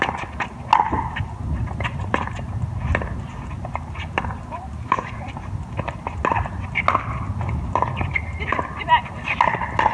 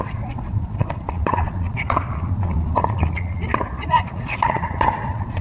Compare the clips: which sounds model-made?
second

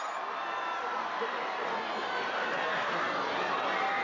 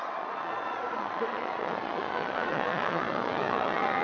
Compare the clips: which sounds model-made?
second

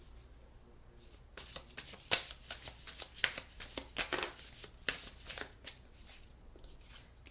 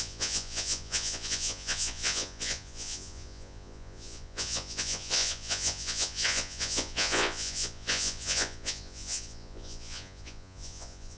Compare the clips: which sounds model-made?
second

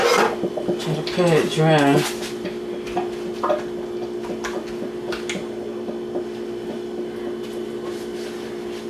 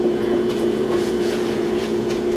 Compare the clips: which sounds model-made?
second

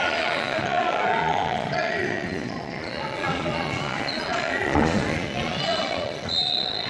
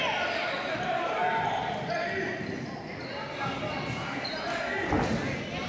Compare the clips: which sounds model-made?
first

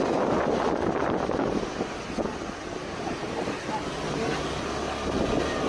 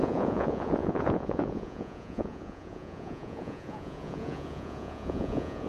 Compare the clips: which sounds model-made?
second